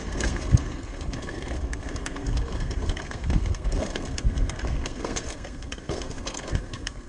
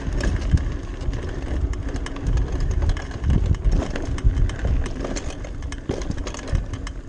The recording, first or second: second